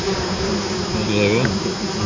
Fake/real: real